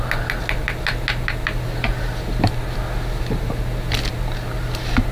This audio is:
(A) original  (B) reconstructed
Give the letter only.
A